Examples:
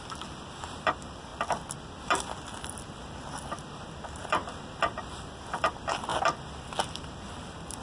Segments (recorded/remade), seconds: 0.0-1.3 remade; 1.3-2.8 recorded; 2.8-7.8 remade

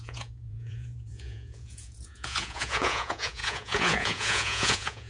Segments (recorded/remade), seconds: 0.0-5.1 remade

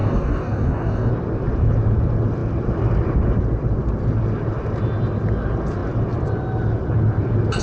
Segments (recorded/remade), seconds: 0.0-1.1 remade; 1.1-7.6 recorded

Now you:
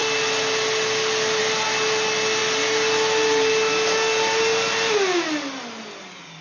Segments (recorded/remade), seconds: 0.0-6.4 recorded

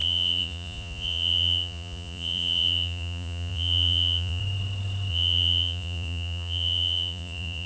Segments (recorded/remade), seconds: 0.0-4.4 remade; 4.4-5.1 recorded; 5.1-7.7 remade

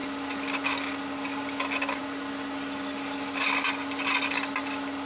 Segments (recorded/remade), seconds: 0.0-5.1 recorded

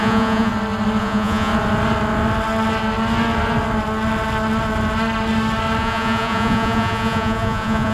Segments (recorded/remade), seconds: 0.0-0.5 remade; 0.5-1.0 recorded; 1.0-1.5 remade; 1.5-5.8 recorded; 5.8-7.9 remade

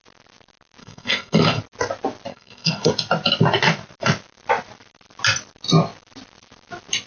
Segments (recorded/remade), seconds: 0.0-0.8 recorded; 0.8-1.6 remade; 1.6-2.3 recorded; 2.3-2.9 remade; 2.9-7.1 recorded